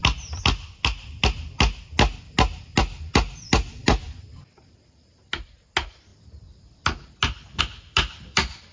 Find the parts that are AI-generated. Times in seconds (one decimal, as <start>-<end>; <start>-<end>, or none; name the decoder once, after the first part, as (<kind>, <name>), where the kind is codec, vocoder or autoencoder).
none